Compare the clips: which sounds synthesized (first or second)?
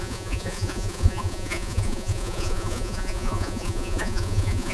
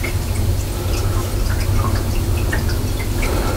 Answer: first